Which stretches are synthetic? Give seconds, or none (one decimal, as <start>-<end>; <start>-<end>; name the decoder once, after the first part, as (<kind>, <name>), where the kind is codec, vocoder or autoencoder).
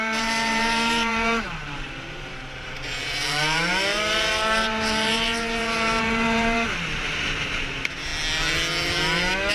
0.0-8.1 (vocoder, BigVGAN v2)